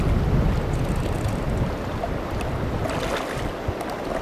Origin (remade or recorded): recorded